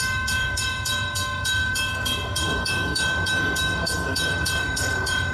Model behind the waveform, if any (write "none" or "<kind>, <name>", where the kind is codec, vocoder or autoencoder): codec, DAC